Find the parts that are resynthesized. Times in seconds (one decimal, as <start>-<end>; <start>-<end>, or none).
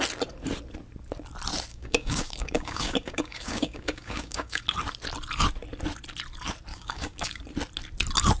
1.7-4.6; 6.7-7.4